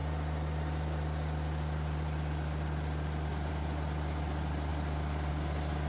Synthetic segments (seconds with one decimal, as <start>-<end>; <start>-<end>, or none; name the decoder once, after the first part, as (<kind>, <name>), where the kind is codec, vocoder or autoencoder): none